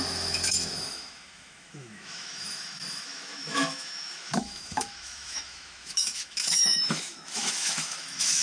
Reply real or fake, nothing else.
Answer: fake